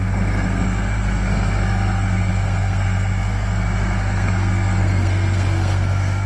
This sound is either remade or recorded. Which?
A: remade